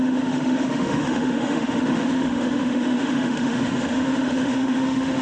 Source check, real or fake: fake